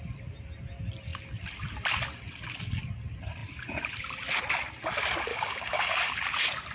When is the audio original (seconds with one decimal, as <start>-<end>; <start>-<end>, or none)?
0.0-5.3; 6.1-6.7